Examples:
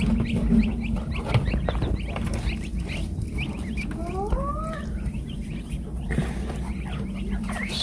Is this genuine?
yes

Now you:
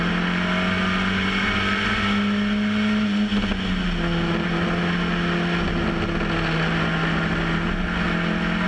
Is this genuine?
yes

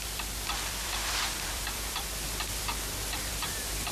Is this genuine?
no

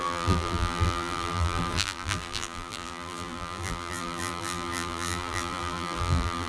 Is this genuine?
no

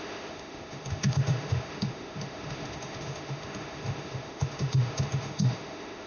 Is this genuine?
no